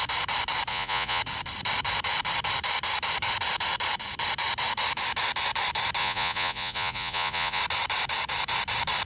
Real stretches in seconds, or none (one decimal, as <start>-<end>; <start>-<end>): 0.0-0.7; 1.2-6.0; 7.6-9.1